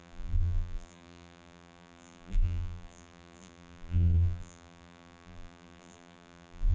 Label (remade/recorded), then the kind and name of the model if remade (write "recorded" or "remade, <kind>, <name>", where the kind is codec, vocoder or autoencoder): remade, vocoder, BigVGAN v2